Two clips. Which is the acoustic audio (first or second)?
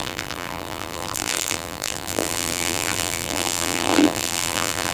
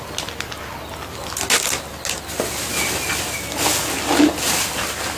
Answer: second